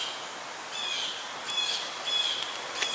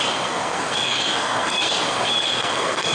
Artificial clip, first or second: second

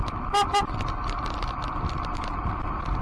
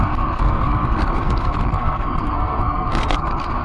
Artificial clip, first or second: second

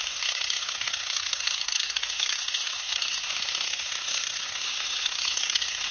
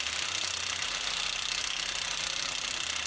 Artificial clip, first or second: first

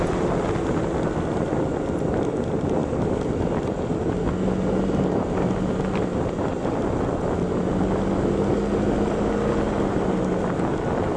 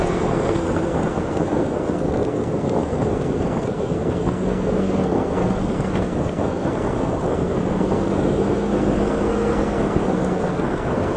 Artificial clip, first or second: second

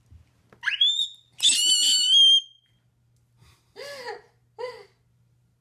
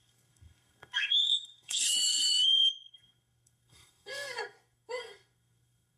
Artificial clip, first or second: second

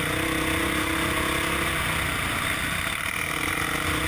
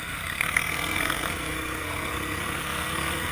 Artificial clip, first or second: second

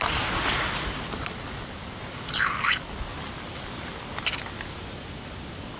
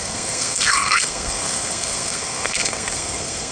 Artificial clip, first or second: second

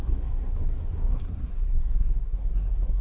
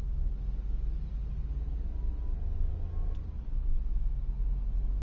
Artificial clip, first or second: first